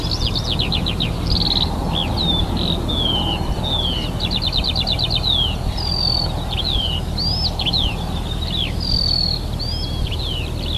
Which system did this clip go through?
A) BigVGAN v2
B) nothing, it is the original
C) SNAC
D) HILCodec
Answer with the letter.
B